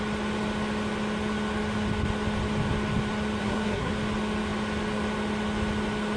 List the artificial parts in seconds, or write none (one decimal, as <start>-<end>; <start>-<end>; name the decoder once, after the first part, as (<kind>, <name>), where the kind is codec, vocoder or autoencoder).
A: 3.4-3.9 (codec, SNAC)